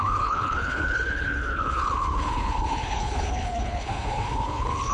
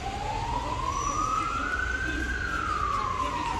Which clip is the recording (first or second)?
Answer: second